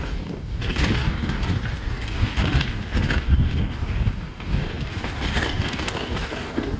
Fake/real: fake